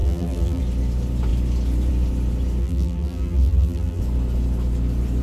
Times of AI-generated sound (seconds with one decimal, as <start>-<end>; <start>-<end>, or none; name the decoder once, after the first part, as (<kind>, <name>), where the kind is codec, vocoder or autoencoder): 0.0-0.6 (vocoder, BigVGAN v2); 2.6-4.0